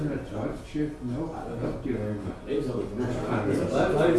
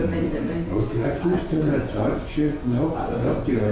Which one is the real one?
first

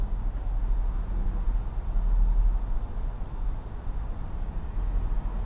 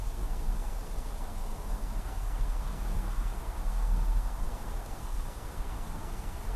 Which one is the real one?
first